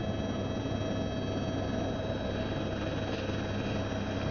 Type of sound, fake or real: real